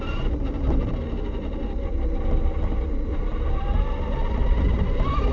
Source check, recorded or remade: recorded